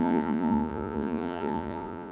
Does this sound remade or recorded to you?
remade